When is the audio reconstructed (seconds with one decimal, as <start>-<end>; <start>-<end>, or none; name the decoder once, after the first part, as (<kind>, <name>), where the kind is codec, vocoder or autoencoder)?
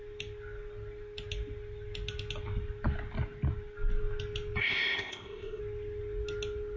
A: 4.6-5.6 (codec, ZipCodec)